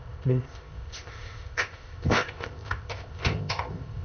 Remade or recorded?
remade